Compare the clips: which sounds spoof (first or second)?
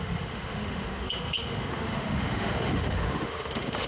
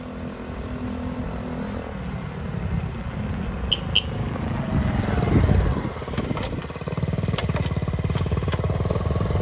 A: first